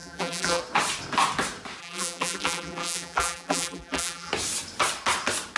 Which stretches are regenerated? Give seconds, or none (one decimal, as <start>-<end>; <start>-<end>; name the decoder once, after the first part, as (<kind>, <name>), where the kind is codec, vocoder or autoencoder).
0.0-0.6 (vocoder, BigVGAN v2); 1.8-4.3